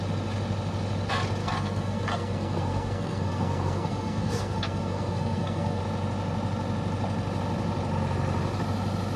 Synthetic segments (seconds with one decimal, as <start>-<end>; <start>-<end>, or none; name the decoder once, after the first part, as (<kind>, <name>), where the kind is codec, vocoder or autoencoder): 1.4-5.8 (codec, SNAC)